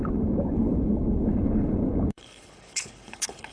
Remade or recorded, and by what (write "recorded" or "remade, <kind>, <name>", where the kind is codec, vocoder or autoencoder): remade, codec, HILCodec